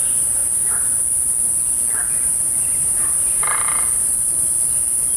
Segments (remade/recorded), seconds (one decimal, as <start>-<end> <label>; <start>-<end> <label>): 0.0-5.2 recorded